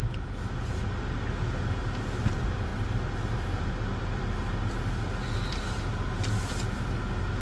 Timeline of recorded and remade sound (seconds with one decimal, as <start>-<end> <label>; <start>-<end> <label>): 0.0-7.4 recorded